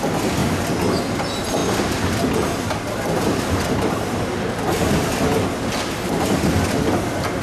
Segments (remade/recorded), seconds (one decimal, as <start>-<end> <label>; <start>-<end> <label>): 0.0-0.4 remade; 0.4-1.0 recorded; 1.0-5.3 remade; 5.3-6.8 recorded; 6.8-7.4 remade